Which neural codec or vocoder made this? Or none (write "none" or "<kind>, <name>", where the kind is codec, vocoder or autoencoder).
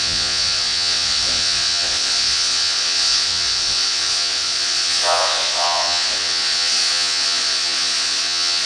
vocoder, Vocos